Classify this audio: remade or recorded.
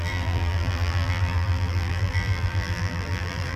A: remade